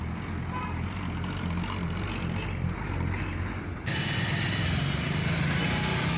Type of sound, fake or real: real